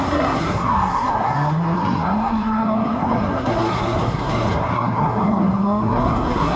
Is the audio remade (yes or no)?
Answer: yes